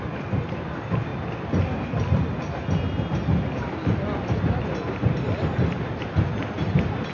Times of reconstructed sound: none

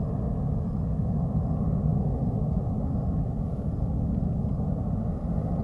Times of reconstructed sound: none

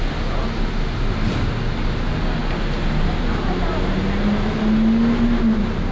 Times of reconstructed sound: none

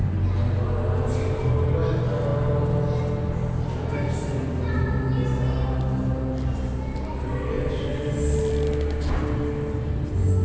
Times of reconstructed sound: none

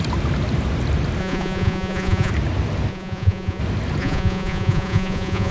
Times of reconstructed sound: 1.2-2.3 (vocoder, Vocos); 2.9-3.6; 4.0-5.5

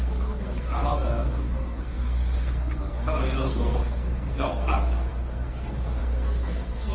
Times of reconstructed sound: 0.0-6.9 (codec, SNAC)